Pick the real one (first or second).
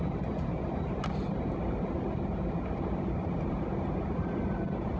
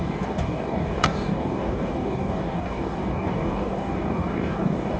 first